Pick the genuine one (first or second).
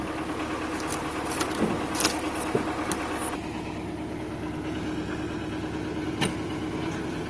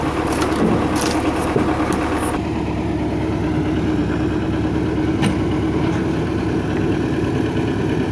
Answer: first